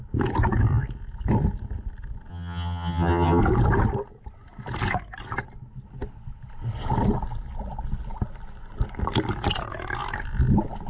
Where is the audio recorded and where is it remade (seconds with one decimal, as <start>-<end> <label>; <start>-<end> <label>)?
0.0-2.3 recorded; 2.3-3.4 remade; 3.4-10.9 recorded